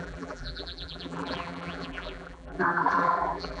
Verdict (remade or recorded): remade